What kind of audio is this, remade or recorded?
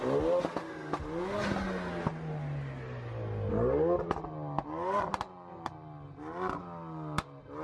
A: recorded